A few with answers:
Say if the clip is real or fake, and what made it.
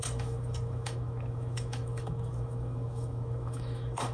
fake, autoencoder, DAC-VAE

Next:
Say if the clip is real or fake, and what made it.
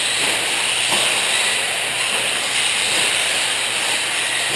real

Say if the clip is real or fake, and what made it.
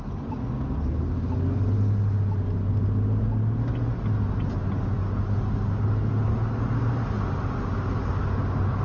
real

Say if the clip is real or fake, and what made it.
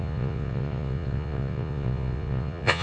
fake, vocoder, Vocos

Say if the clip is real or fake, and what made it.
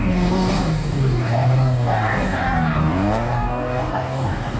fake, codec, DAC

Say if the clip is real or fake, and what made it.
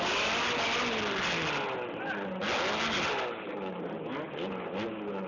real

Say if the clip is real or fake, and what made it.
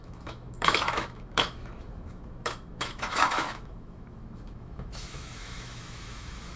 fake, autoencoder, DAC-VAE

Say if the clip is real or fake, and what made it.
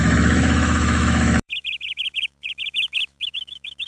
fake, autoencoder, DAC-VAE